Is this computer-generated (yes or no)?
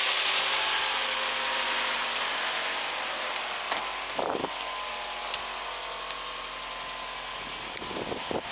no